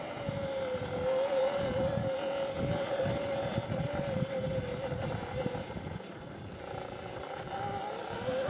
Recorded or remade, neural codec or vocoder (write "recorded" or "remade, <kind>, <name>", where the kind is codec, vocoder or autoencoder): recorded